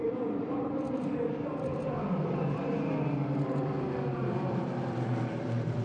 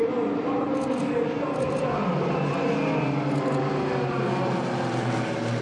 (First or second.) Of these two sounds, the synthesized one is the first